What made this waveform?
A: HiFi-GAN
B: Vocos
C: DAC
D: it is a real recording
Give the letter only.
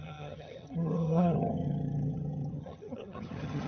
A